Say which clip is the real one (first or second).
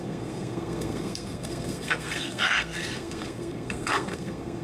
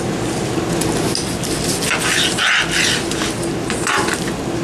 second